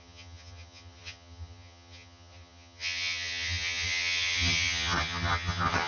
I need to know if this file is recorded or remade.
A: remade